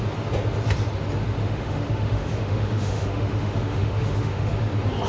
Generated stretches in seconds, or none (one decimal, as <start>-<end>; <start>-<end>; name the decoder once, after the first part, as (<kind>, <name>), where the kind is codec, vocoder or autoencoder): 1.4-4.5 (autoencoder, DAC-VAE)